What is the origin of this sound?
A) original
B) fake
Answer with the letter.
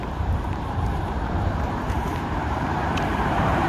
B